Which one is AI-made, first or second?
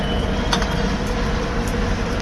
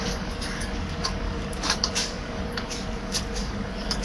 second